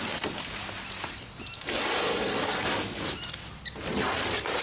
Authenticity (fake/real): real